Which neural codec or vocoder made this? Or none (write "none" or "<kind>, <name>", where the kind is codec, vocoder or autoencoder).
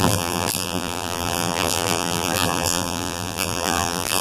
vocoder, BigVGAN v2